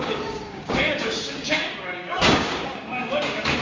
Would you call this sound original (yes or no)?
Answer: no